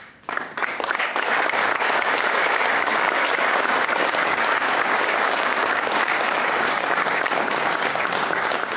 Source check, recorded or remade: remade